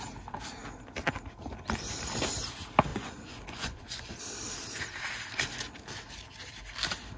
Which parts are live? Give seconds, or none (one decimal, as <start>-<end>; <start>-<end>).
0.0-2.9; 4.2-7.2